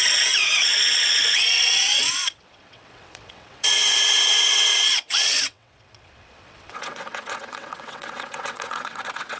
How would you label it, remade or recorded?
remade